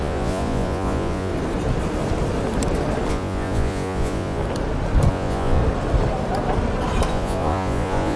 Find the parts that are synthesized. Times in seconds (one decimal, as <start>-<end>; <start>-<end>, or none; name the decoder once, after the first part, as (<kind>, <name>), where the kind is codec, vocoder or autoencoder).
0.0-1.3 (vocoder, Vocos); 3.1-4.4; 5.1-5.6; 7.1-8.2